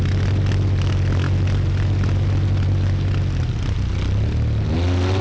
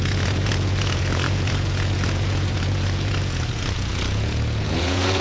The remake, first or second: second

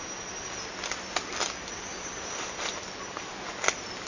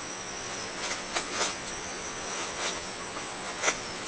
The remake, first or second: second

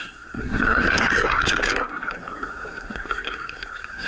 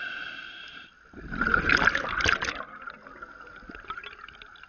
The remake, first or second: first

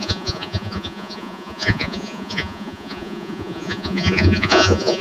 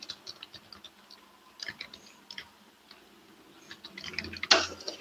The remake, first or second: first